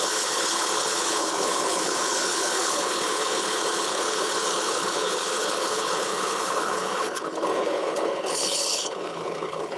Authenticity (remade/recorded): remade